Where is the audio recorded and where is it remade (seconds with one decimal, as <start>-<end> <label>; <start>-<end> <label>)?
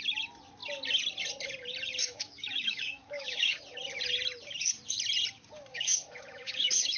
0.0-2.0 recorded; 2.0-3.6 remade; 3.6-5.7 recorded; 5.7-7.0 remade